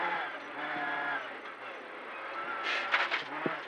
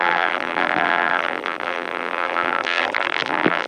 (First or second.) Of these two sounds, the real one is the first